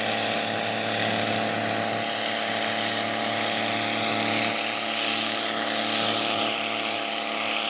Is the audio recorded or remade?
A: recorded